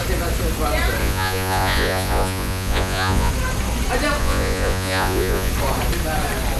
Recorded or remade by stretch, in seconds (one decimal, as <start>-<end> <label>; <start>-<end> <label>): 0.0-1.0 recorded; 1.0-3.3 remade; 3.3-4.2 recorded; 4.2-5.5 remade; 5.5-6.6 recorded